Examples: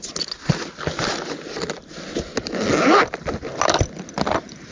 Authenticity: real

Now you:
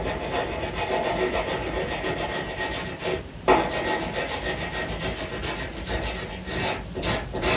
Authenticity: real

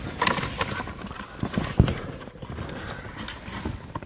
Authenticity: real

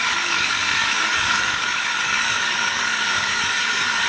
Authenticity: fake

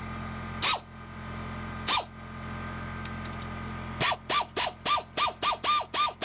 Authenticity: real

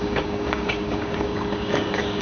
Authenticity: fake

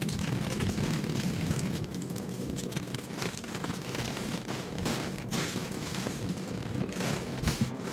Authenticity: fake